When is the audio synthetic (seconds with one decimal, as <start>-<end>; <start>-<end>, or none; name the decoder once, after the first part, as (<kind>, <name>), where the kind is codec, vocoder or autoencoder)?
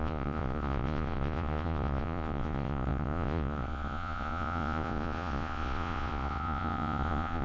0.0-7.4 (vocoder, Vocos)